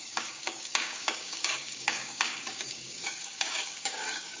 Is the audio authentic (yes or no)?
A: no